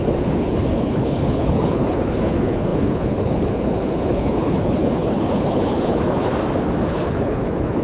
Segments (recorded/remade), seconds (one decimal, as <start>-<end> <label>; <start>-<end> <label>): 0.0-6.3 remade; 6.3-6.9 recorded; 6.9-7.8 remade